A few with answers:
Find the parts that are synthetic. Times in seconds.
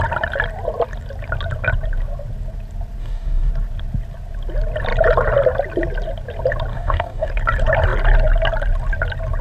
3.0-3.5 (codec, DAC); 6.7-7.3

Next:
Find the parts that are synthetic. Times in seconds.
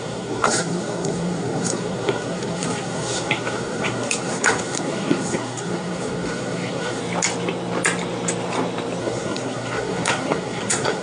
0.0-7.0 (codec, SNAC); 9.0-11.0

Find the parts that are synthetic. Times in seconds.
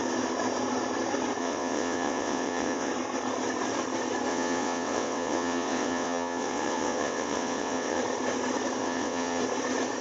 1.4-2.9 (vocoder, WaveNeXt); 4.3-8.0; 8.8-9.4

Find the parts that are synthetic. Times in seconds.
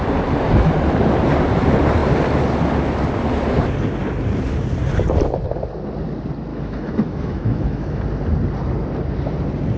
6.5-8.0 (autoencoder, DAC-VAE)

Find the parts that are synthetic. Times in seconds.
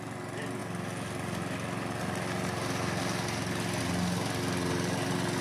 none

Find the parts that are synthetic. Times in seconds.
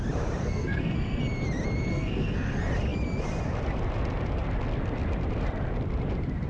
0.4-1.2 (codec, SNAC); 1.9-2.5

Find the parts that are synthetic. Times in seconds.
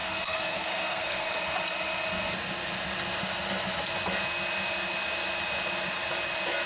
0.0-1.3 (codec, SNAC)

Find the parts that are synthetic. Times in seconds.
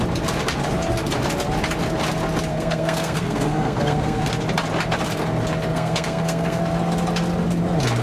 2.5-4.3 (codec, SNAC); 5.7-6.6